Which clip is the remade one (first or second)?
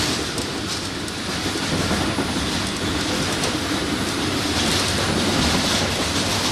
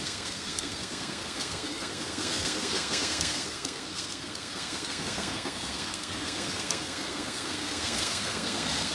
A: second